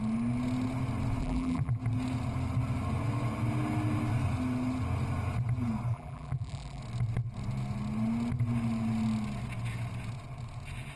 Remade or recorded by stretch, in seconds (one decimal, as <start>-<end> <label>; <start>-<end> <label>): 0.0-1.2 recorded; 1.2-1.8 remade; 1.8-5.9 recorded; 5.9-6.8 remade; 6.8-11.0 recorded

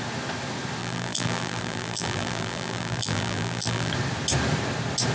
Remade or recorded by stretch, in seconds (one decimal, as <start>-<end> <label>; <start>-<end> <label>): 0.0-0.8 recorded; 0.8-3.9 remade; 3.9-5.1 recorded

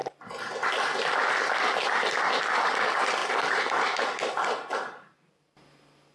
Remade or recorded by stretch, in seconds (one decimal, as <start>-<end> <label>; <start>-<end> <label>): 0.0-3.2 recorded; 3.2-4.0 remade; 4.0-6.1 recorded